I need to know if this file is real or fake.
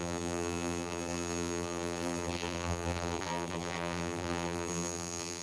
fake